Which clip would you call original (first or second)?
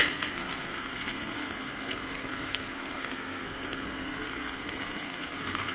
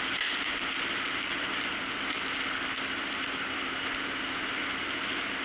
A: second